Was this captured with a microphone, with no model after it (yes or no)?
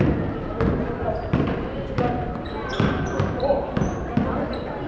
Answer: no